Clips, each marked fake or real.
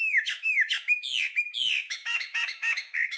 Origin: fake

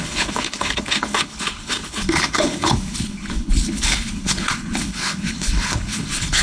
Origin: fake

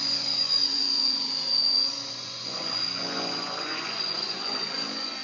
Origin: fake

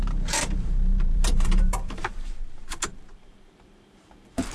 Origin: fake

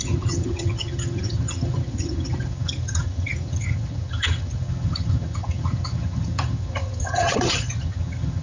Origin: fake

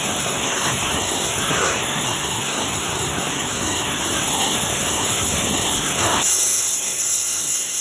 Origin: fake